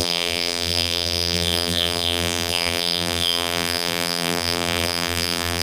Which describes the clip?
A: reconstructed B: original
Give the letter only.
A